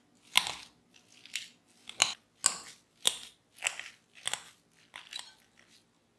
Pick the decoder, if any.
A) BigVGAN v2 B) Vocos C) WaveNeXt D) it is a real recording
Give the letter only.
D